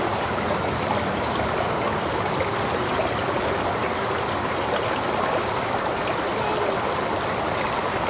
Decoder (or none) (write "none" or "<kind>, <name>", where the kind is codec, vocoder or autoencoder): none